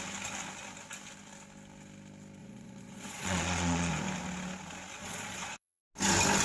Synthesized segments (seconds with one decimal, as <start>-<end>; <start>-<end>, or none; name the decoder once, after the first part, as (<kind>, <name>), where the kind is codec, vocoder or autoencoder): 2.4-3.9 (vocoder, Vocos); 5.0-5.8